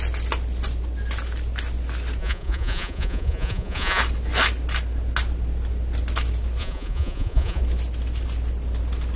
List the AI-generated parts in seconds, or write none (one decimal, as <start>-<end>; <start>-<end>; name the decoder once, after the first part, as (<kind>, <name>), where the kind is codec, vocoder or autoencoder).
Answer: 2.2-4.0 (vocoder, Vocos); 6.6-7.6